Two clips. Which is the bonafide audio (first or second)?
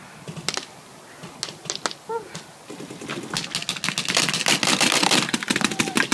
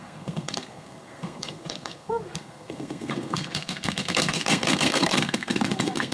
first